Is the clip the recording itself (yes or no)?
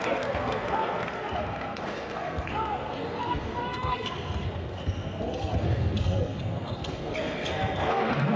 no